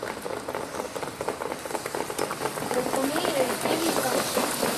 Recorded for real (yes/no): yes